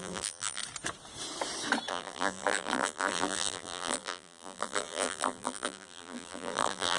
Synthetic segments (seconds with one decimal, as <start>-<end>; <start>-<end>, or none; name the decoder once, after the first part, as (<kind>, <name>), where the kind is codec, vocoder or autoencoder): 0.0-0.6 (vocoder, BigVGAN v2); 1.9-7.0